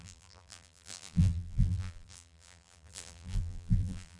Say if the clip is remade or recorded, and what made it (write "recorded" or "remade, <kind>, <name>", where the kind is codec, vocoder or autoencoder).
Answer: remade, vocoder, BigVGAN v2